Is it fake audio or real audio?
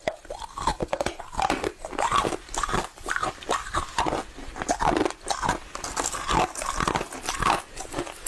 real